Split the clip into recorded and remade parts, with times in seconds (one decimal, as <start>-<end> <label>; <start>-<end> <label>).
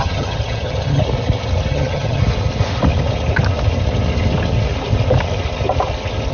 0.0-1.0 remade; 1.0-1.7 recorded; 1.7-2.2 remade; 2.2-6.3 recorded